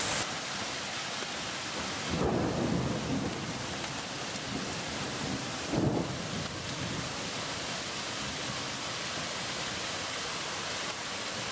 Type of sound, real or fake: real